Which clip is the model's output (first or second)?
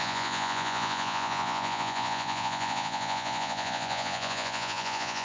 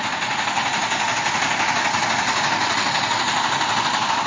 first